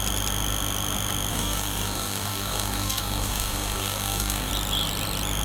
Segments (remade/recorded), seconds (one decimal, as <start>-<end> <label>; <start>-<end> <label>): 0.0-1.3 recorded; 1.3-4.5 remade; 4.5-5.4 recorded